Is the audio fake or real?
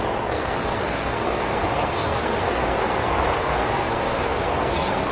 fake